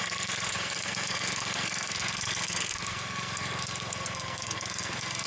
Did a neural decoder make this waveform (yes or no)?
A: yes